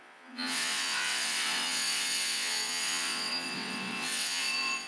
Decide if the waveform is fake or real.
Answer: fake